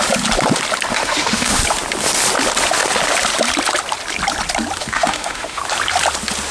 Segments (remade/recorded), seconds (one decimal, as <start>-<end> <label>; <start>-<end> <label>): 0.0-0.9 recorded; 0.9-1.6 remade; 1.6-4.8 recorded; 4.8-5.6 remade; 5.6-6.5 recorded